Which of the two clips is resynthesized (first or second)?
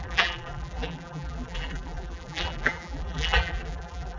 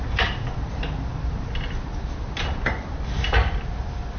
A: first